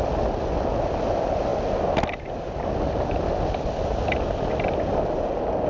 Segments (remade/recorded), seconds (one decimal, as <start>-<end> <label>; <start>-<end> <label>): 0.0-5.7 recorded